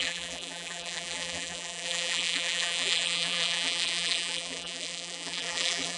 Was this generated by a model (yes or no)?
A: yes